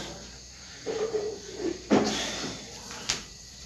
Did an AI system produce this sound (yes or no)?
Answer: yes